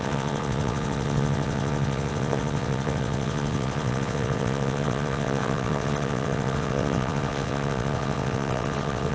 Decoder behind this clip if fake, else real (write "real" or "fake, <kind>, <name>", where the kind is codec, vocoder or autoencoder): fake, vocoder, WaveNeXt